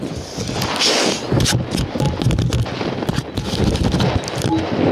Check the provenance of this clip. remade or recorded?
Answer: recorded